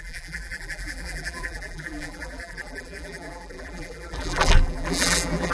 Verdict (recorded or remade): remade